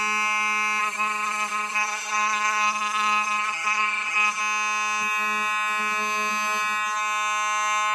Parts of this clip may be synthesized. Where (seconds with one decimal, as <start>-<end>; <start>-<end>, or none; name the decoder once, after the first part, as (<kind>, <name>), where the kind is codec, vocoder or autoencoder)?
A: 0.8-4.4 (codec, SNAC)